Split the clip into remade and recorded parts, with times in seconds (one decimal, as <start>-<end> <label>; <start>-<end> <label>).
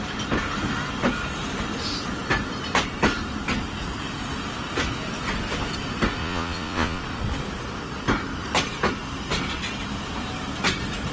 0.0-6.2 recorded; 6.2-7.0 remade; 7.0-11.1 recorded